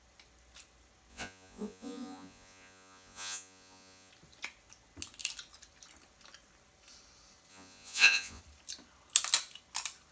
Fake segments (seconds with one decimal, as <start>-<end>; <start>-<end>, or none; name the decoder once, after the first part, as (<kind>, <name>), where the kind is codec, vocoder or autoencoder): 1.1-4.1 (vocoder, Vocos); 7.5-8.4